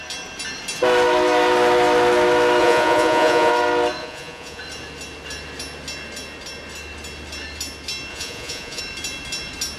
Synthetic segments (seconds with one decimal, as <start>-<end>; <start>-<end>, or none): 2.6-3.5; 4.0-4.6; 8.1-8.8